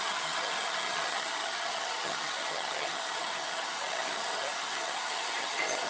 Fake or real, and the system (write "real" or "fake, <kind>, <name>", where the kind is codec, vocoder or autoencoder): fake, vocoder, HiFi-GAN